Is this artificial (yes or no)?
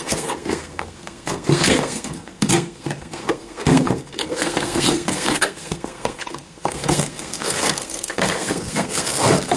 yes